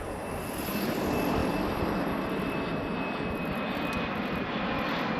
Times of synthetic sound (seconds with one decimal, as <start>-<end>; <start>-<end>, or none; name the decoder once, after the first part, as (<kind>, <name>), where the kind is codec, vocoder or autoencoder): none